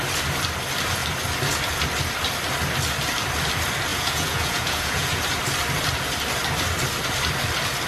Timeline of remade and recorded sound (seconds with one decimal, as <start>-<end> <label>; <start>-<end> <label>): 0.0-3.9 recorded; 3.9-5.2 remade; 5.2-7.9 recorded